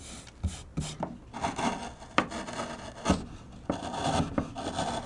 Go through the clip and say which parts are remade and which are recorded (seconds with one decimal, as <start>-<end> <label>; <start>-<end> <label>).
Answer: 0.0-5.1 recorded